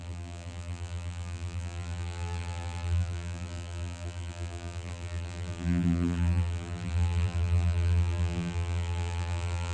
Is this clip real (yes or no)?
no